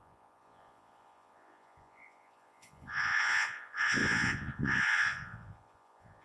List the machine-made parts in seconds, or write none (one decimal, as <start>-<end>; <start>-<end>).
0.0-6.2